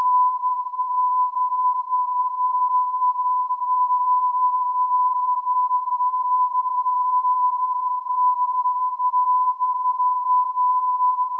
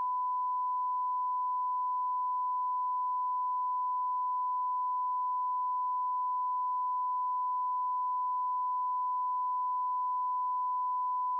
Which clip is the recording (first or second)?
second